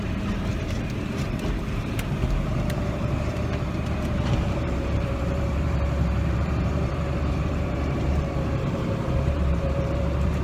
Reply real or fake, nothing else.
fake